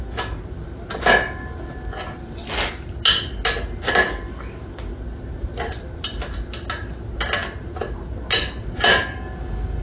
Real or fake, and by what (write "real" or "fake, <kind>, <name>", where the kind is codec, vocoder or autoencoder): real